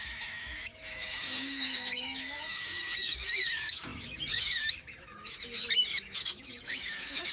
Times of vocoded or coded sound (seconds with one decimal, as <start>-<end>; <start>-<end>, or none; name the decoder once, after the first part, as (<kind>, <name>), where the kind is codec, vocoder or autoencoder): 0.0-7.3 (autoencoder, DAC-VAE)